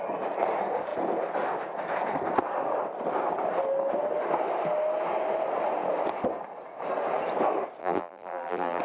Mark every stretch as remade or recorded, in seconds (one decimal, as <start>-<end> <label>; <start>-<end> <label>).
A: 0.0-7.8 recorded; 7.8-8.8 remade